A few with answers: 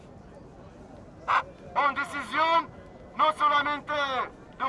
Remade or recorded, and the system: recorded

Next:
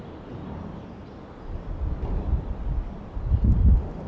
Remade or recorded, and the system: recorded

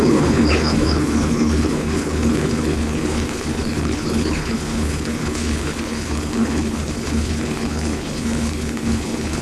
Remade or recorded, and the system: remade, codec, HILCodec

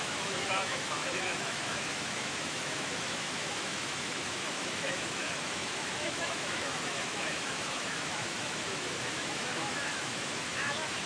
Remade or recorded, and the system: remade, autoencoder, DAC-VAE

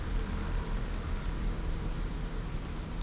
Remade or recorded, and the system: recorded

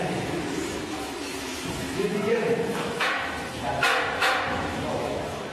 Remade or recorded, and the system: remade, autoencoder, DAC-VAE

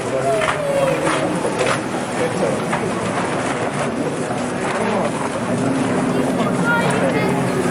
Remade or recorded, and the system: recorded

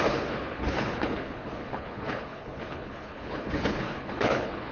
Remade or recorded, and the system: remade, codec, HILCodec